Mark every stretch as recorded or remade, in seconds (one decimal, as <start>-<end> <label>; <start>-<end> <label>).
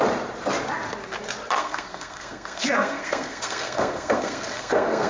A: 0.0-1.6 recorded; 1.6-5.1 remade